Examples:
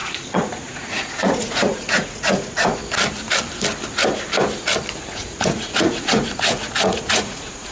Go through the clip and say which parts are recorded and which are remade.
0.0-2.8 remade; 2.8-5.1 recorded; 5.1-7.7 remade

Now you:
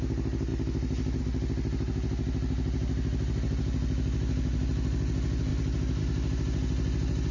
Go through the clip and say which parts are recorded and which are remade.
0.0-7.3 recorded

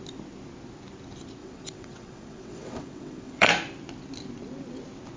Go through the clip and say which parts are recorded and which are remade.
0.0-1.4 recorded; 1.4-3.5 remade; 3.5-5.2 recorded

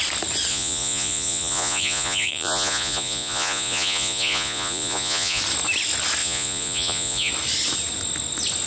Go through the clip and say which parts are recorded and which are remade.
0.0-0.5 recorded; 0.5-5.4 remade; 5.4-6.2 recorded; 6.2-7.3 remade; 7.3-8.7 recorded

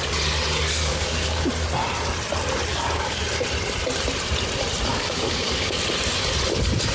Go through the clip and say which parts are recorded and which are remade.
0.0-0.9 recorded; 0.9-1.5 remade; 1.5-2.7 recorded; 2.7-3.2 remade; 3.2-4.9 recorded; 4.9-5.8 remade; 5.8-6.9 recorded

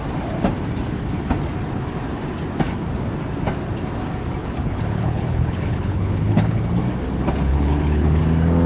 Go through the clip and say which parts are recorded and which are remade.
0.0-4.4 recorded; 4.4-6.6 remade; 6.6-7.5 recorded; 7.5-8.2 remade; 8.2-8.7 recorded